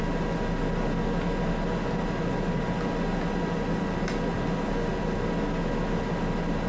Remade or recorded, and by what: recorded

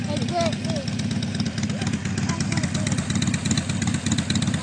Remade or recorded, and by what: recorded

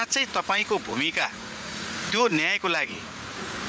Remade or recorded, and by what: remade, vocoder, Vocos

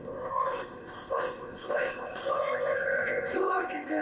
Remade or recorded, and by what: remade, codec, ZipCodec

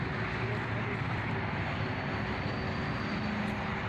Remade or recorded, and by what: recorded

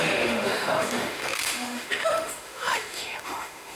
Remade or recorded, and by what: remade, autoencoder, DAC-VAE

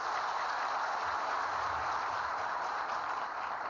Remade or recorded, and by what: recorded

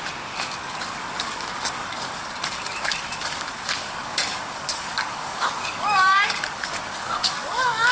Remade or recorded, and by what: remade, codec, DAC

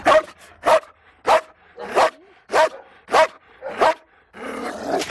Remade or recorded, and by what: recorded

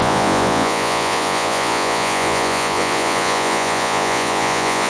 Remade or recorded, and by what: remade, vocoder, Vocos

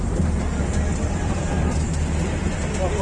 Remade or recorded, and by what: remade, vocoder, BigVGAN v2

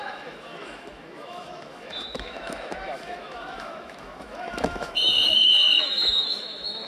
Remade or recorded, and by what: remade, autoencoder, DAC-VAE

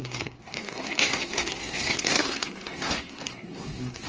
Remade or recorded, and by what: remade, codec, SNAC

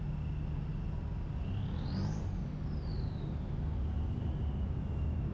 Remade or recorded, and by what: recorded